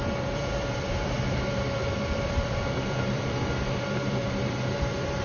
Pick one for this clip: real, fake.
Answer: fake